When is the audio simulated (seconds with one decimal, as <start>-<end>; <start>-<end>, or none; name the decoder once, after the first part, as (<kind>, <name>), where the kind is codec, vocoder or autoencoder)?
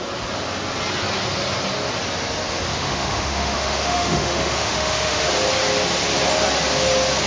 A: 2.7-5.3 (autoencoder, DAC-VAE)